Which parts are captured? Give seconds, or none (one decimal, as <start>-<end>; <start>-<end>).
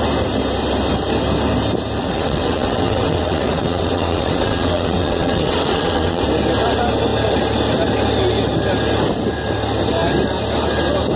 0.0-2.0; 6.2-11.2